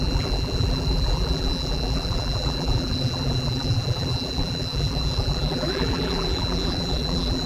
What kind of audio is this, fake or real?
fake